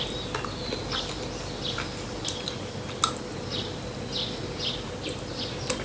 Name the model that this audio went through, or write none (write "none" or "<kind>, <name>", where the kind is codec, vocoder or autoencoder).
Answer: none